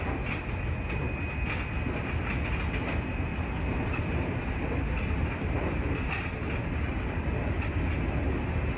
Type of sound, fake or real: real